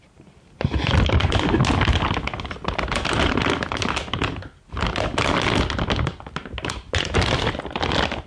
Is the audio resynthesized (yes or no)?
no